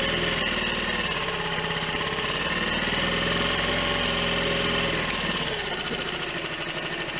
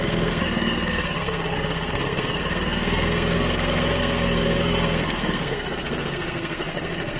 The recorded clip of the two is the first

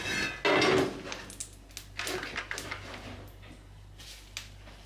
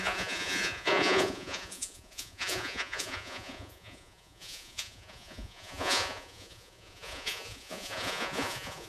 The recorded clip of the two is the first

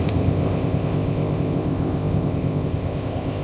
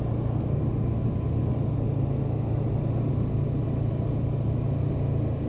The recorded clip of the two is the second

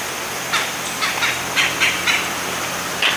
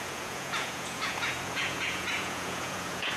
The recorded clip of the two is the first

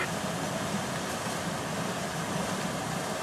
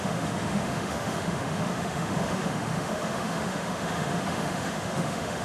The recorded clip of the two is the first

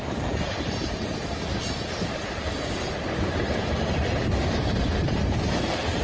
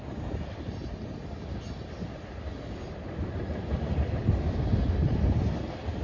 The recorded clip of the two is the second